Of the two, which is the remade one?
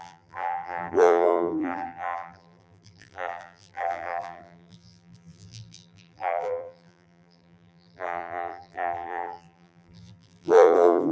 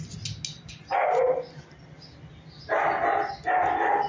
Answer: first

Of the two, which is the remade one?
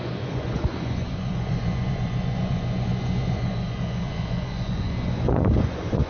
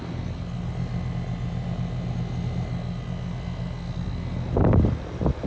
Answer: first